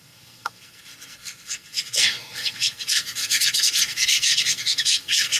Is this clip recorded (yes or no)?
no